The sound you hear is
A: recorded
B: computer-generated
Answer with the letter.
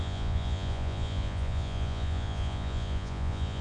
B